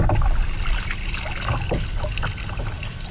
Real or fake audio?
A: real